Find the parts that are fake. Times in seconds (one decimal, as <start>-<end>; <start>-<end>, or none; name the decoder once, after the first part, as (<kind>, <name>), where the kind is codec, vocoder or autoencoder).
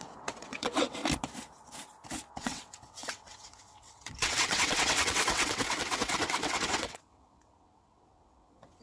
0.0-1.0 (vocoder, WaveNeXt); 2.3-8.8